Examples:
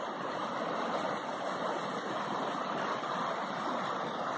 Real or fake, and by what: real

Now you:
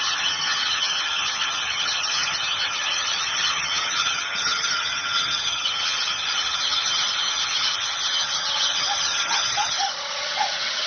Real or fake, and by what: fake, vocoder, HiFi-GAN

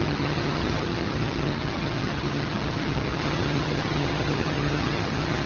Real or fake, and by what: fake, vocoder, HiFi-GAN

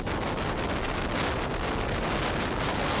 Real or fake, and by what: real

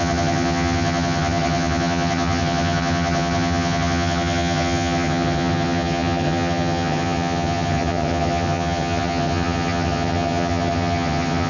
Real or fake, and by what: fake, vocoder, HiFi-GAN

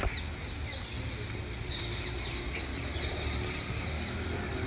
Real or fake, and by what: real